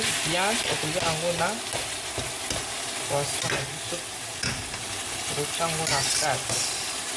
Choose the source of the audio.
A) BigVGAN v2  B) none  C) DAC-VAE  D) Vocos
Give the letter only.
B